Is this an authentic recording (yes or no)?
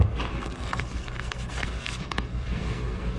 no